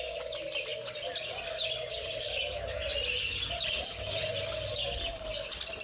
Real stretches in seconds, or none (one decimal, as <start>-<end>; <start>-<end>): 0.0-5.8